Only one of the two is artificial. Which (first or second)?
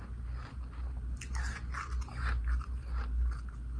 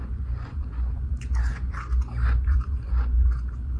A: second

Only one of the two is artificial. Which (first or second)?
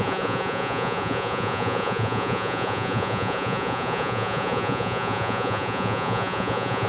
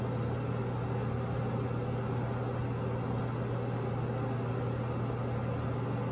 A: first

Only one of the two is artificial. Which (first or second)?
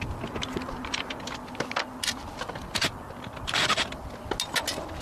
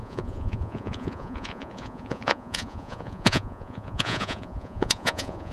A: second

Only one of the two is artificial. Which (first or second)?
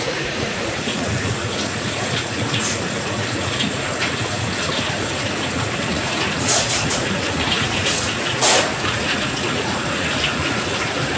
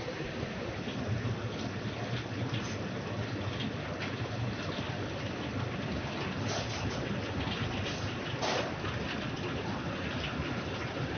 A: first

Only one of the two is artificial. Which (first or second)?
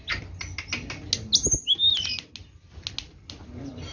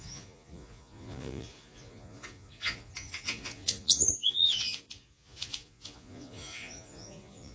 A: second